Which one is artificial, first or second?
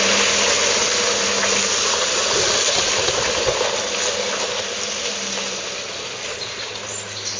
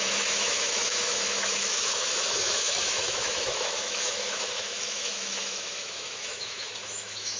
second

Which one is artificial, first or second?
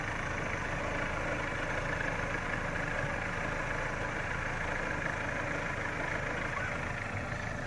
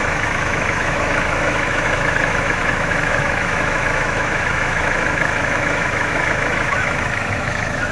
second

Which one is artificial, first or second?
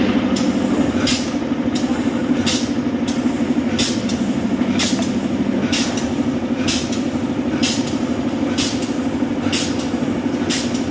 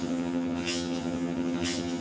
second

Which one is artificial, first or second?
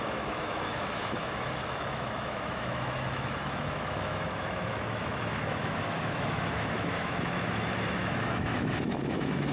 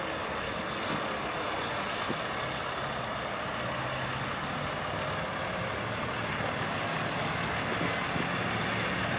first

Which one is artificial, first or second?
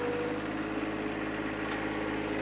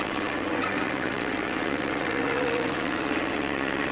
second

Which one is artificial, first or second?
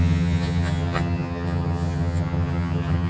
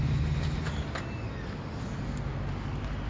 first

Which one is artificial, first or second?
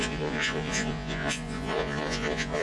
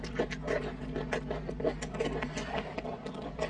first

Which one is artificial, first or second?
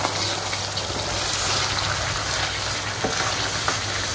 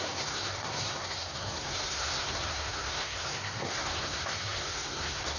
second